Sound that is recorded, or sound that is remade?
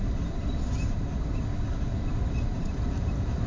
recorded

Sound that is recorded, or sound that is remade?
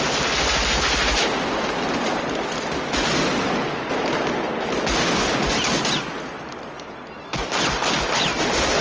recorded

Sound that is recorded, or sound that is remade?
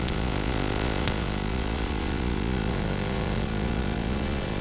remade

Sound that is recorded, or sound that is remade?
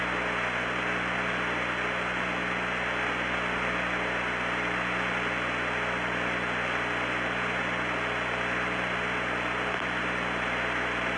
recorded